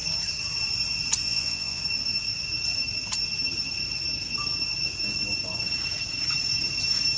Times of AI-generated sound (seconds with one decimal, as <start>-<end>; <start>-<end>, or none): 1.2-1.8

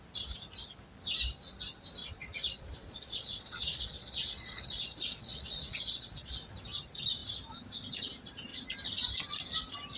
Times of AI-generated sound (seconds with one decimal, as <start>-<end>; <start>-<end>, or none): 2.0-6.5

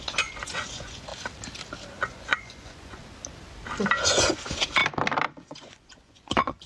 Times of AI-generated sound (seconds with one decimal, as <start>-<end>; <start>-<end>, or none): 0.0-1.1; 1.9-3.0; 4.0-4.8; 5.4-6.7

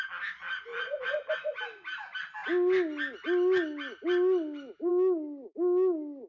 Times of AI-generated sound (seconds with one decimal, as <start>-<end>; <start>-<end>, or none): none